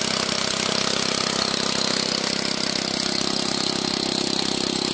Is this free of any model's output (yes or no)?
yes